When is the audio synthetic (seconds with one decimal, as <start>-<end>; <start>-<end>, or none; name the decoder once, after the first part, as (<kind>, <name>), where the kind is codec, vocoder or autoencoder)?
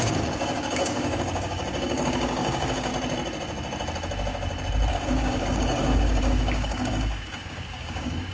0.0-2.9 (codec, DAC); 4.9-8.3